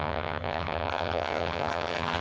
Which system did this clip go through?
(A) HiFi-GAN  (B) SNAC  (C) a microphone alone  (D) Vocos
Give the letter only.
A